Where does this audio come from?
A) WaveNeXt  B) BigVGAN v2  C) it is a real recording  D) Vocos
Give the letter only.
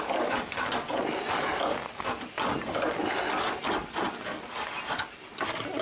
C